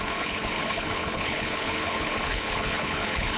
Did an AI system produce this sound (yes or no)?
yes